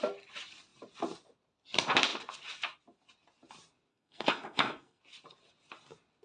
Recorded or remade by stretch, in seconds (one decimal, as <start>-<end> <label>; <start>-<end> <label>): 0.0-3.9 recorded; 3.9-5.0 remade; 5.0-6.2 recorded

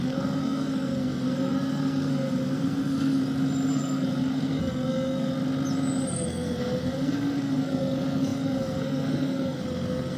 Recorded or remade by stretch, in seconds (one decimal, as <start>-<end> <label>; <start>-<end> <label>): 0.0-3.2 remade; 3.2-3.7 recorded; 3.7-5.3 remade; 5.3-6.1 recorded; 6.1-10.2 remade

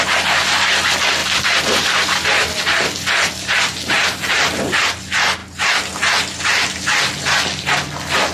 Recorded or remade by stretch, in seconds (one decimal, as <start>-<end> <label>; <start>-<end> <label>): 0.0-1.2 recorded; 1.2-4.9 remade; 4.9-8.3 recorded

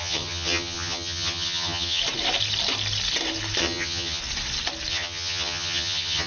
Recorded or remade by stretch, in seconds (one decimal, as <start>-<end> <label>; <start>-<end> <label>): 0.0-2.0 remade; 2.0-3.6 recorded; 3.6-4.2 remade; 4.2-4.9 recorded; 4.9-6.3 remade

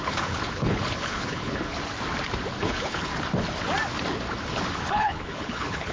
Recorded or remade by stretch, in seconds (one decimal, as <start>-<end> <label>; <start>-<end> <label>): 0.0-1.8 remade; 1.8-2.6 recorded; 2.6-3.1 remade; 3.1-4.9 recorded; 4.9-5.9 remade

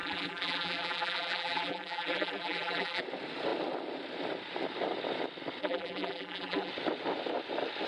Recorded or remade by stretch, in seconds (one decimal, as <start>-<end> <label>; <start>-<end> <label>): 0.0-3.0 remade; 3.0-5.6 recorded; 5.6-6.7 remade; 6.7-7.9 recorded

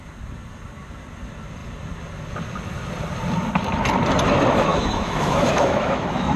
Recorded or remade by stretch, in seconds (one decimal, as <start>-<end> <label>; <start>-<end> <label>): 0.0-4.7 recorded; 4.7-6.4 remade